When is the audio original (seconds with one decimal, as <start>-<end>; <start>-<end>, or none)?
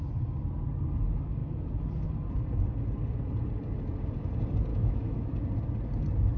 0.0-4.7; 5.3-6.4